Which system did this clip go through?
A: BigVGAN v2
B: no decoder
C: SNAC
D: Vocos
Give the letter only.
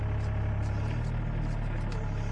B